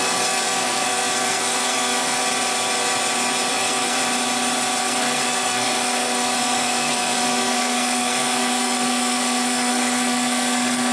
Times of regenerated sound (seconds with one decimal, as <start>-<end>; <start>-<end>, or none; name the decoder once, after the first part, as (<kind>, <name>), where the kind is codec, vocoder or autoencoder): 0.0-2.2 (codec, SNAC); 3.5-4.0; 4.8-10.9